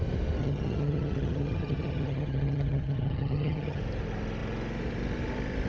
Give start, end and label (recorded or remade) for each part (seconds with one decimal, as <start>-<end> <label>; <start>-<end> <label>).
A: 0.0-0.4 recorded; 0.4-3.8 remade; 3.8-5.7 recorded